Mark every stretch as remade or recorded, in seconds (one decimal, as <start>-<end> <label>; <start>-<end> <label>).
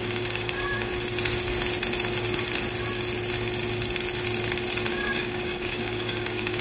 0.0-0.9 remade; 0.9-4.9 recorded; 4.9-6.6 remade